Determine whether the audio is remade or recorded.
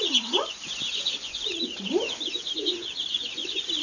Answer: remade